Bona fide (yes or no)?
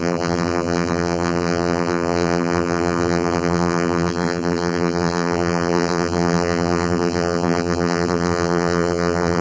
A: no